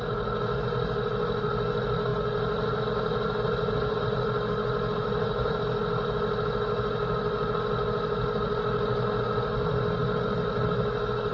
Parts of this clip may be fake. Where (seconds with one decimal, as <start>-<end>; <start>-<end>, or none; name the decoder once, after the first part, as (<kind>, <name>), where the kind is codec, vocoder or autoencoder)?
none